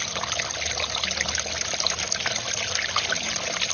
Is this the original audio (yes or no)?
yes